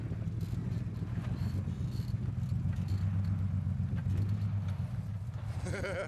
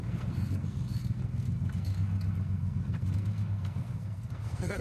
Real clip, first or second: first